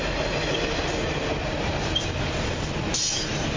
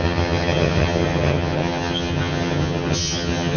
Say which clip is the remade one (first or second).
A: second